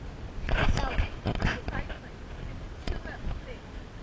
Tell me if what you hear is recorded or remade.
recorded